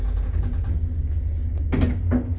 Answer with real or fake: real